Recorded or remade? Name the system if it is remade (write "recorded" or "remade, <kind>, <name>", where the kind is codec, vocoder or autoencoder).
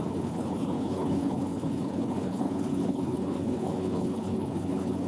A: remade, codec, HILCodec